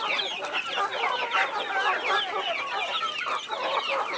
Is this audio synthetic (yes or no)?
no